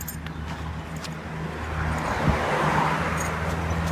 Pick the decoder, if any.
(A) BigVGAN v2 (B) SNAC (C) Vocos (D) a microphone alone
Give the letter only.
D